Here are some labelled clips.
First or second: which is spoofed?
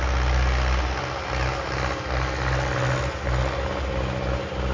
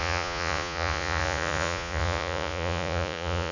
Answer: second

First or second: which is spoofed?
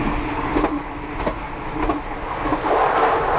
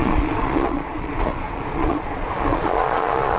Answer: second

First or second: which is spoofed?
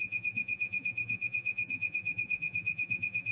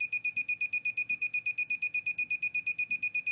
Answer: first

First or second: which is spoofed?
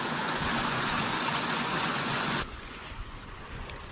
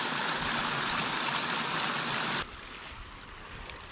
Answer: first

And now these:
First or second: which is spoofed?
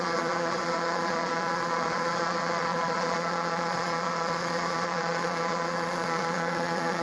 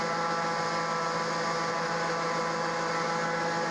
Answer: first